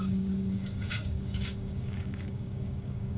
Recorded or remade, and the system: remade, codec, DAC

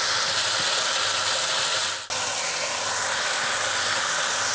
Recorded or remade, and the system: recorded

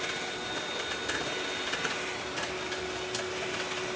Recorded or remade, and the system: recorded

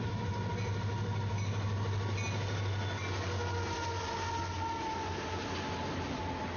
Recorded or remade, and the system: recorded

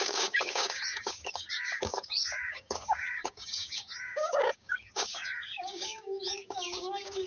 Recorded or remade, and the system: remade, codec, DAC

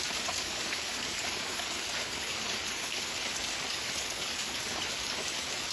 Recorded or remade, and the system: remade, codec, DAC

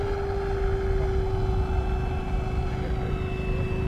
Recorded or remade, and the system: recorded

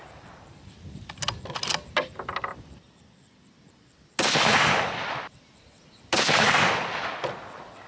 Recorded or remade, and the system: recorded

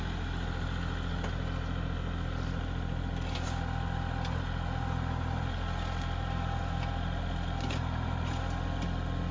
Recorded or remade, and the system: recorded